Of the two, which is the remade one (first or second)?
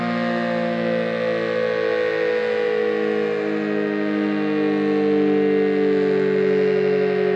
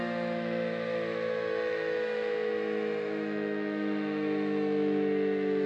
second